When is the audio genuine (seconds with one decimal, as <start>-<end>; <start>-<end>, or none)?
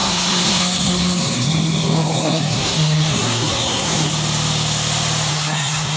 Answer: 4.1-5.3